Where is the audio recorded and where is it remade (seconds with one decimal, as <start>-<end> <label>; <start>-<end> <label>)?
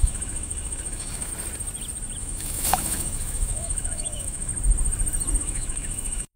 0.0-1.3 remade; 1.3-2.2 recorded; 2.2-4.5 remade; 4.5-5.4 recorded; 5.4-6.4 remade